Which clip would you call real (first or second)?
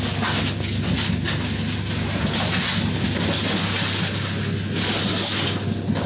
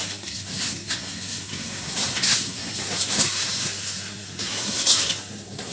first